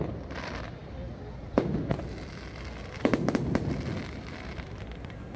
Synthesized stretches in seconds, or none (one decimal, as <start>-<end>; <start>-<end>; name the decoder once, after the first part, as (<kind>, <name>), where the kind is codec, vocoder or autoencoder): 0.0-0.8 (vocoder, BigVGAN v2); 4.0-5.4